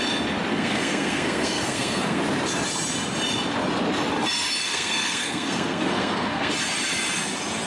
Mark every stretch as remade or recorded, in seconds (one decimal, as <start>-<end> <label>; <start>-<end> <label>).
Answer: 0.0-0.5 recorded; 0.5-2.2 remade; 2.2-4.6 recorded; 4.6-6.5 remade; 6.5-7.7 recorded